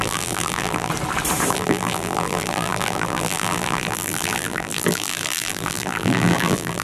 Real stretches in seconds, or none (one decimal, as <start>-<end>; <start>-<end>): 0.9-1.5

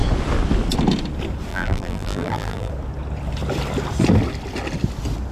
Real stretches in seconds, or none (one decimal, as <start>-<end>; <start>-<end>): 0.0-1.5; 2.7-5.3

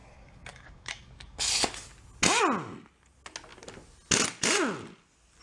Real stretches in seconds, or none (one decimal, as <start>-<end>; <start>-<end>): 1.5-5.4

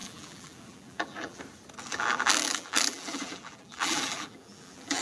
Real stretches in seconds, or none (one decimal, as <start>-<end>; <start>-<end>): 1.4-1.9

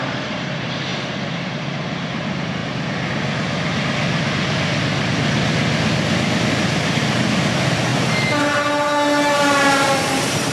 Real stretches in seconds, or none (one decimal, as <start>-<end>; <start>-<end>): 2.6-7.5

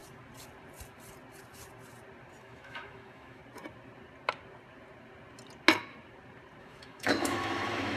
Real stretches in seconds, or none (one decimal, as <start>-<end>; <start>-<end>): 0.0-2.4; 3.4-6.6

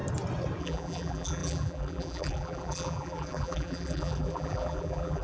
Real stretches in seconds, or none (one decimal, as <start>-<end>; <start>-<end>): 0.0-0.6